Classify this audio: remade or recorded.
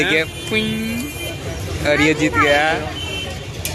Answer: recorded